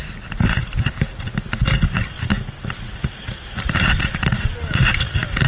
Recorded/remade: recorded